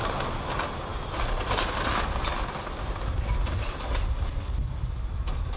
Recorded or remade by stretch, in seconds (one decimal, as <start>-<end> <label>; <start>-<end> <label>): 0.0-5.6 recorded